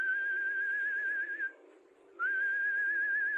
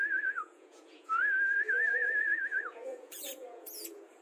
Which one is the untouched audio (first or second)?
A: first